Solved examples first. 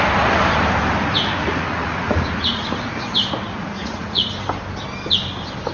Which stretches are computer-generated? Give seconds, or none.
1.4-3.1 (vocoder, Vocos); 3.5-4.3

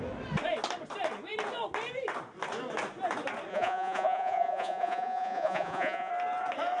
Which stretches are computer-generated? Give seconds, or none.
3.5-6.1 (vocoder, Vocos)

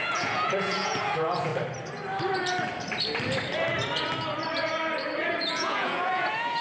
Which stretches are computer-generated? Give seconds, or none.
0.0-1.5 (vocoder, Vocos); 5.5-6.6

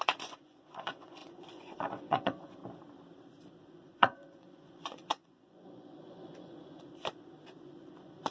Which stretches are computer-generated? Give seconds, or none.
0.0-2.6 (vocoder, Vocos); 3.6-6.9; 7.6-8.3